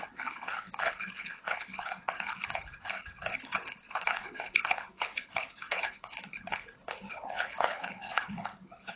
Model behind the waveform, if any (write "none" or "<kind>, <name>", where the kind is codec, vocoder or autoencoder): codec, HILCodec